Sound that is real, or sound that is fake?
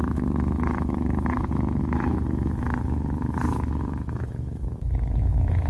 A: fake